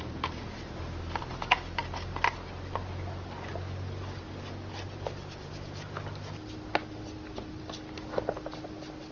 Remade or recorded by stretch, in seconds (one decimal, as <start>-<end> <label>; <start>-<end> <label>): 0.0-9.1 recorded